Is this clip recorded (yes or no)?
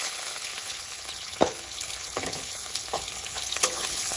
no